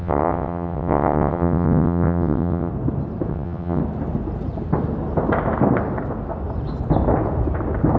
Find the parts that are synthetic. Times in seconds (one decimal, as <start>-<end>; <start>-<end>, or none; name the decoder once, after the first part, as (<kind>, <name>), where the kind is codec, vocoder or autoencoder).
0.0-2.7 (vocoder, WaveNeXt); 3.3-3.8

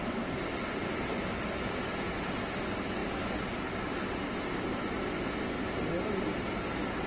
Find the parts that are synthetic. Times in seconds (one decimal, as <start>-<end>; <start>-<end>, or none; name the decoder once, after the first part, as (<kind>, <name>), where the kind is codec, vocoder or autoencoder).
none

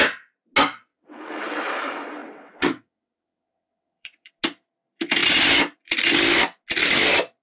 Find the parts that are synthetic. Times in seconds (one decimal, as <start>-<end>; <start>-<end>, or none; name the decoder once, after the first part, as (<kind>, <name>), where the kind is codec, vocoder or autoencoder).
0.9-1.7 (vocoder, WaveNeXt); 2.2-4.3

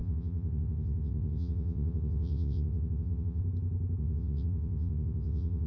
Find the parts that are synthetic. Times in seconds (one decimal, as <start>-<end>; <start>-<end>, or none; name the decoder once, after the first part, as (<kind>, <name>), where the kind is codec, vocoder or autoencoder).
0.0-3.4 (vocoder, WaveNeXt); 4.0-5.7

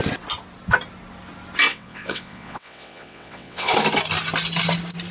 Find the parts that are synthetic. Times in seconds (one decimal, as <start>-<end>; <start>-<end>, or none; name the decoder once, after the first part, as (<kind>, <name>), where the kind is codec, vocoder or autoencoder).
1.7-3.7 (vocoder, WaveNeXt)

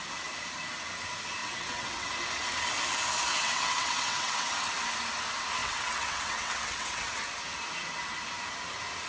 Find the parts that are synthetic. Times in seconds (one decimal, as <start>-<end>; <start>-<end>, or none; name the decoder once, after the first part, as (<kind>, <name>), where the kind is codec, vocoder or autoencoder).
1.4-2.1 (vocoder, WaveNeXt); 3.3-4.5; 5.6-7.2

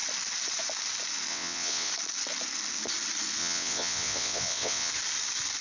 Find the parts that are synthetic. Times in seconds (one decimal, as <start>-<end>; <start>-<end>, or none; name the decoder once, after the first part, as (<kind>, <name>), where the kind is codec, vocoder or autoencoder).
1.3-1.9 (vocoder, WaveNeXt); 3.4-4.9